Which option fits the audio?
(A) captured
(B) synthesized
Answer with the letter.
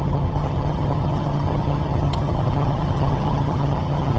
B